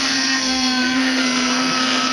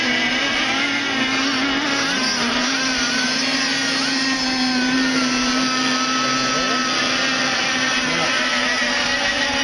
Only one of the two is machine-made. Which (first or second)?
first